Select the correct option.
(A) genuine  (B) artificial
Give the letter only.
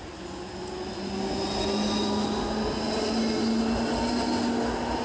A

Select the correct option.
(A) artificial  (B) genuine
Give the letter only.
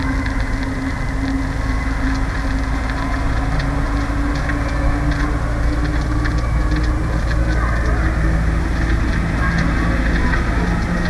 B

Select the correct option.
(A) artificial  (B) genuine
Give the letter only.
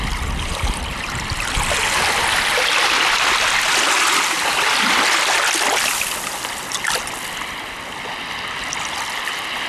B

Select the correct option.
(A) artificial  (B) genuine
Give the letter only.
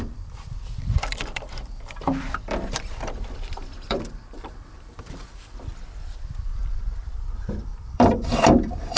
A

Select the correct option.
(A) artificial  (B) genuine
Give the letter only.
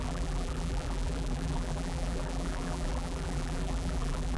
A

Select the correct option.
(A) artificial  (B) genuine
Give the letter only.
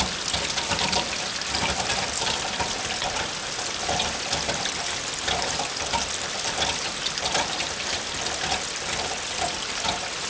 A